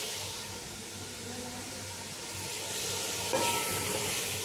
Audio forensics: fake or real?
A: real